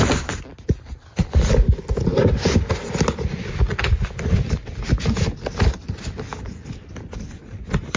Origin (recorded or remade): recorded